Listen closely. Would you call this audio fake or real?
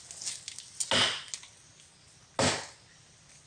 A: real